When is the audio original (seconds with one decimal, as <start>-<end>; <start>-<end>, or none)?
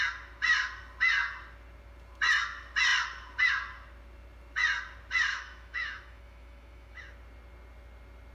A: 0.0-5.3; 7.0-8.3